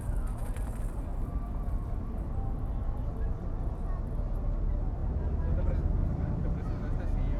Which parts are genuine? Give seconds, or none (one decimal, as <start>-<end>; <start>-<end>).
0.0-7.4